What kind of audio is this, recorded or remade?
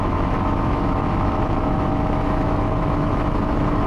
remade